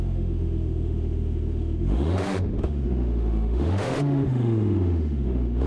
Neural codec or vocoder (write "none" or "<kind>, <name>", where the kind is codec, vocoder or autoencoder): autoencoder, DAC-VAE